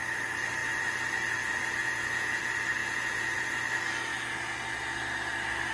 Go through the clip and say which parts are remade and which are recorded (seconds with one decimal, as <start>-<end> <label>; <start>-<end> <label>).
0.0-1.8 recorded; 1.8-2.4 remade; 2.4-2.8 recorded; 2.8-3.5 remade; 3.5-5.7 recorded